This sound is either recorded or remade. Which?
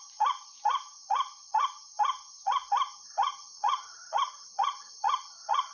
remade